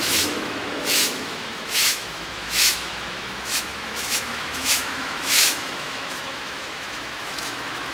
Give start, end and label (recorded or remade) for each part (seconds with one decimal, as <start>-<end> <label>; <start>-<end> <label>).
0.0-7.9 remade